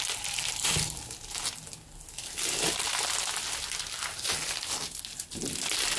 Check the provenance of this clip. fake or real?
real